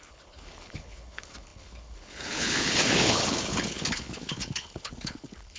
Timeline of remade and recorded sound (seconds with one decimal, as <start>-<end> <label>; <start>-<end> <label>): 0.0-5.6 remade